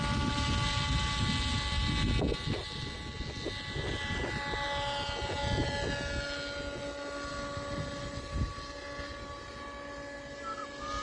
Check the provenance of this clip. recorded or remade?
recorded